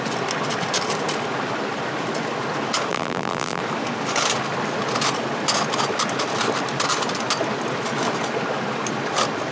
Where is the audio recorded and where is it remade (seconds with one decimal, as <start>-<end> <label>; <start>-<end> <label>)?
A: 0.0-2.9 recorded; 2.9-3.6 remade; 3.6-9.5 recorded